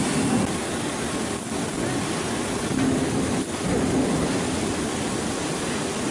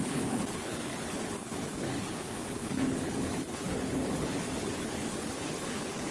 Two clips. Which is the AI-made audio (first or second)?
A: second